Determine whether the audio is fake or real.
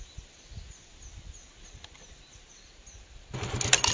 real